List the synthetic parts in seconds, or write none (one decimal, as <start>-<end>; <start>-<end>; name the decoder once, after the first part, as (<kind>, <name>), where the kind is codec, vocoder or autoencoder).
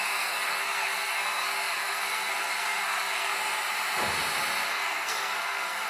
0.0-3.3 (codec, SNAC); 4.7-5.9